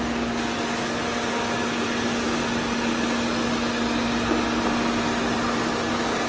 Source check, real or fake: real